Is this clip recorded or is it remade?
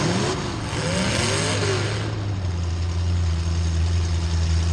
recorded